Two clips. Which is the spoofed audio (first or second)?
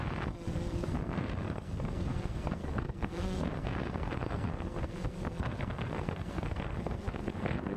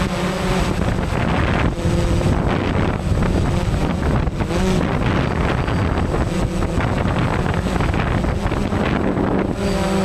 first